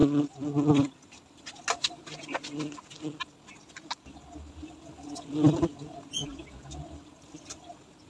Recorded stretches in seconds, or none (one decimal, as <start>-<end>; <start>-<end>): 0.0-8.1